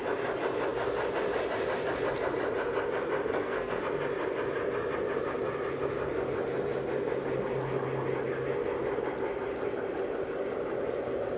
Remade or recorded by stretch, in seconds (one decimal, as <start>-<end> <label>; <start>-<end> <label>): 0.0-3.3 recorded; 3.3-3.8 remade; 3.8-11.4 recorded